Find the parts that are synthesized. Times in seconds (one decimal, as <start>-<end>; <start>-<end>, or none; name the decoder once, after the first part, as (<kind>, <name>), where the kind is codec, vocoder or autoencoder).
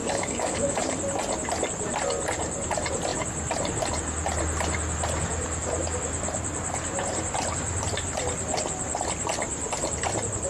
0.0-1.0 (codec, DAC)